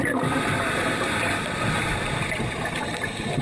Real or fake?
fake